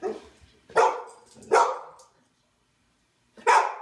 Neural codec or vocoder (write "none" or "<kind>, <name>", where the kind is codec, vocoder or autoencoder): none